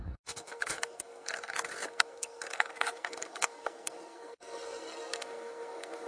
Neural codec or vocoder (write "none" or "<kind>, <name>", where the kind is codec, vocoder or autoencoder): codec, SNAC